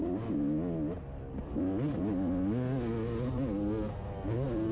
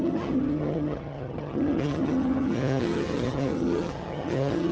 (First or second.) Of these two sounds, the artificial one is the second